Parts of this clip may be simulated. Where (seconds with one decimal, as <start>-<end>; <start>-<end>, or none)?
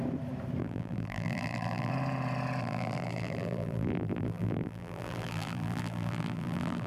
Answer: 0.6-1.9; 2.6-6.9